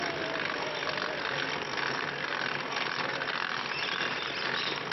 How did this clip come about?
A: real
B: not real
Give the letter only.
A